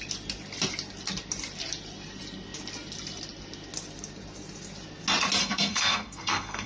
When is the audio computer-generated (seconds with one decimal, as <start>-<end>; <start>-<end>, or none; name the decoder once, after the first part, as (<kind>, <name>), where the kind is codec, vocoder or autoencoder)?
5.4-6.7 (codec, SNAC)